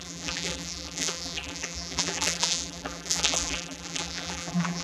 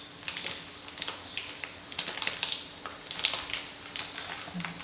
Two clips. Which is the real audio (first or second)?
second